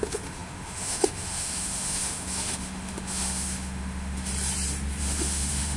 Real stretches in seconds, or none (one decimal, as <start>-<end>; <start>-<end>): 4.3-5.0